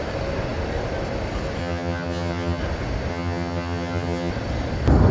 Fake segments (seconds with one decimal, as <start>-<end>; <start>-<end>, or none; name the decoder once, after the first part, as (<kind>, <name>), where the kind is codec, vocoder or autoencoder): 1.6-2.6 (vocoder, HiFi-GAN); 3.1-4.3